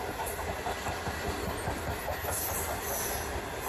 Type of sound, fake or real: real